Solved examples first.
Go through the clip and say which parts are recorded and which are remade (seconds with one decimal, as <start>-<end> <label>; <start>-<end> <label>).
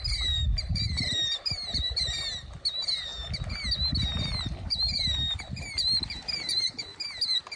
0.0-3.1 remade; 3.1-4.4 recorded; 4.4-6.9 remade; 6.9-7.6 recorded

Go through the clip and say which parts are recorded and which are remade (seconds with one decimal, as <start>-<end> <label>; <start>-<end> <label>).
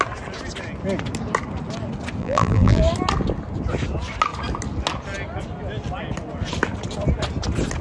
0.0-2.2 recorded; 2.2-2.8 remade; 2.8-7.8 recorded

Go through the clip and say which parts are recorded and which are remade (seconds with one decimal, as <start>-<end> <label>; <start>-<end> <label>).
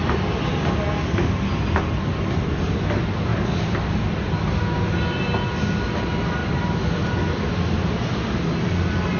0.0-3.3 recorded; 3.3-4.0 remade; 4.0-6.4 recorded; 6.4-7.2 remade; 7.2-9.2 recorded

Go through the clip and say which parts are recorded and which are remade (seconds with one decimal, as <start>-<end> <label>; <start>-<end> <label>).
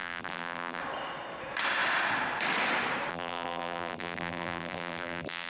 0.0-0.8 remade; 0.8-3.1 recorded; 3.1-5.5 remade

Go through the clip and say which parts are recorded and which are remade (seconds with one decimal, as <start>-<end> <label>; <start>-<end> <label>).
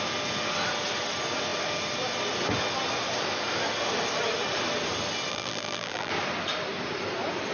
0.0-5.3 recorded; 5.3-6.1 remade; 6.1-7.5 recorded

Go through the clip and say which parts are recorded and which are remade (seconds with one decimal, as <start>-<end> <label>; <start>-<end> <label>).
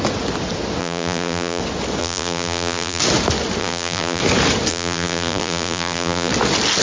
0.0-0.8 recorded; 0.8-1.6 remade; 1.6-2.0 recorded; 2.0-3.0 remade; 3.0-3.6 recorded; 3.6-4.2 remade; 4.2-4.7 recorded; 4.7-6.3 remade; 6.3-6.8 recorded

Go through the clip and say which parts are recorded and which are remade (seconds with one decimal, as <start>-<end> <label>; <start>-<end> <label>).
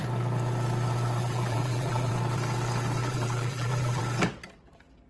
0.0-1.2 recorded; 1.2-2.1 remade; 2.1-3.0 recorded; 3.0-4.0 remade; 4.0-5.1 recorded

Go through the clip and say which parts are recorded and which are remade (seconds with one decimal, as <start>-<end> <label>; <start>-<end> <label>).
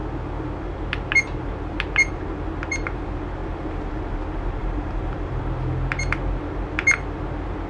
0.0-4.6 recorded; 4.6-5.4 remade; 5.4-7.7 recorded